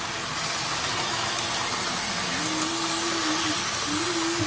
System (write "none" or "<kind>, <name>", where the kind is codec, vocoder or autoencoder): none